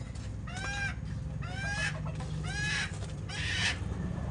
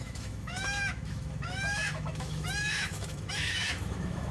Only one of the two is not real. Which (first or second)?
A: second